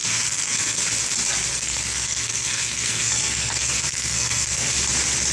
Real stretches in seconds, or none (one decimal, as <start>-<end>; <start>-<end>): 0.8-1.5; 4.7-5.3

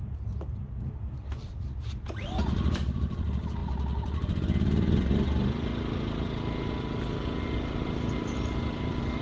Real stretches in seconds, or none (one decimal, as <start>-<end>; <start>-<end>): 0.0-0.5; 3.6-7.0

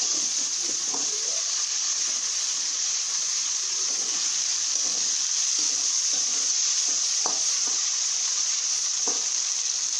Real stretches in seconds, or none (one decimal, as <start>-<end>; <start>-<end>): 4.2-6.0; 9.2-10.0

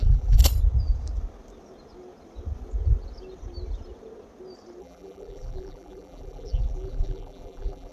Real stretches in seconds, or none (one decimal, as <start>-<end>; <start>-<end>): 0.4-4.8